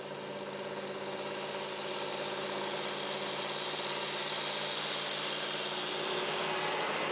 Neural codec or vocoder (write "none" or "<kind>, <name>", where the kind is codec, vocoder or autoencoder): none